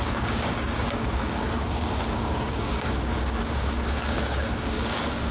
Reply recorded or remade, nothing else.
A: remade